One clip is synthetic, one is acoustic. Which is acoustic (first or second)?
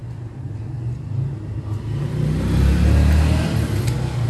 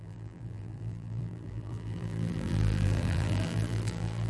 first